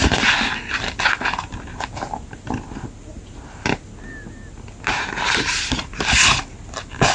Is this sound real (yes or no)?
yes